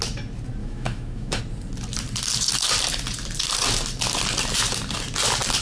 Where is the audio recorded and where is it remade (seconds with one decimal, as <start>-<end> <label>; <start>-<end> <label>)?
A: 0.0-0.6 recorded; 0.6-1.4 remade; 1.4-5.6 recorded

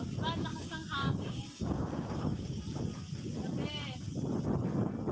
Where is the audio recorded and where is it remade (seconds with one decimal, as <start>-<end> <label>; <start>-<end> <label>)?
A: 0.0-0.5 recorded; 0.5-2.7 remade; 2.7-5.1 recorded

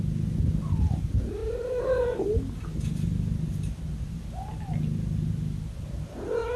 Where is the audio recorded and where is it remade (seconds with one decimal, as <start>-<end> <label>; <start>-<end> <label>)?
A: 0.0-6.6 recorded

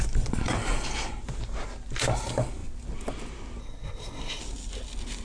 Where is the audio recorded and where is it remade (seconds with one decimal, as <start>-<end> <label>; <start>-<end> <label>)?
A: 0.0-3.6 recorded; 3.6-4.4 remade; 4.4-5.2 recorded

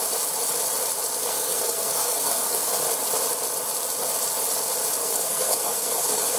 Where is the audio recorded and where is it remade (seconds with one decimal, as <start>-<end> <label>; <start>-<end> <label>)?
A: 0.0-1.2 recorded; 1.2-2.8 remade; 2.8-5.0 recorded; 5.0-6.4 remade

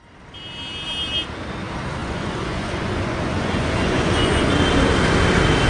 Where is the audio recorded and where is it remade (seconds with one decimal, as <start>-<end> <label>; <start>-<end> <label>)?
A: 0.0-2.0 recorded; 2.0-4.5 remade; 4.5-5.7 recorded